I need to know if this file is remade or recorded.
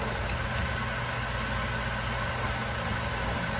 recorded